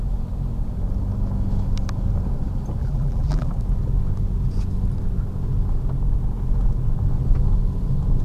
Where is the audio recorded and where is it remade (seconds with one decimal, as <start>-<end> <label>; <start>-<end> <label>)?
0.0-2.8 recorded; 2.8-3.5 remade; 3.5-8.2 recorded